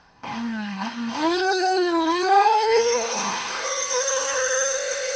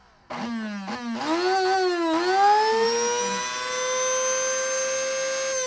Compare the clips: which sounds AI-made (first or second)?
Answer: first